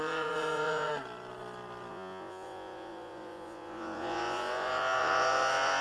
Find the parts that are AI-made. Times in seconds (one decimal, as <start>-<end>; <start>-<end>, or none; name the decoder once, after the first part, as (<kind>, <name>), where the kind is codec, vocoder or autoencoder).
0.0-0.9 (vocoder, Vocos); 1.9-5.8